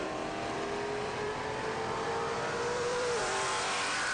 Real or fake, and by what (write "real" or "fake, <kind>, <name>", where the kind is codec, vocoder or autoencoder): fake, vocoder, BigVGAN v2